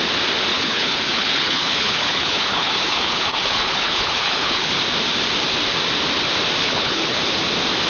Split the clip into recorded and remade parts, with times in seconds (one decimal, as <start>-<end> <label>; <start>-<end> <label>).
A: 0.0-0.5 recorded; 0.5-4.7 remade; 4.7-6.6 recorded; 6.6-7.2 remade; 7.2-7.9 recorded